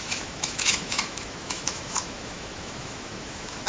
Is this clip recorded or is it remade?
remade